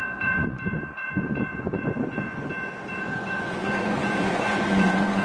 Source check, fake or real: fake